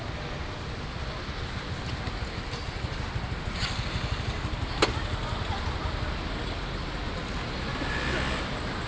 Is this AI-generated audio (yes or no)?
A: no